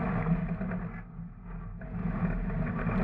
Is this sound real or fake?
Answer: real